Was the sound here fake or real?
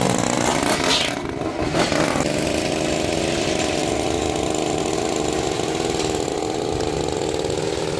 real